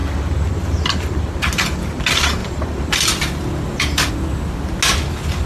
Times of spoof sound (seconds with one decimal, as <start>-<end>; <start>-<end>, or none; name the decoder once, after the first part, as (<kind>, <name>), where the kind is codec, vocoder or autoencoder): 2.4-4.1 (vocoder, BigVGAN v2)